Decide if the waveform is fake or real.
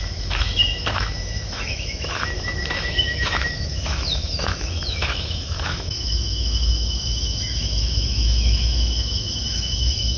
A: fake